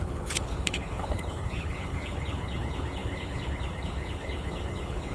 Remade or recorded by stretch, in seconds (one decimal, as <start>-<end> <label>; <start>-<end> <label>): 0.0-5.1 remade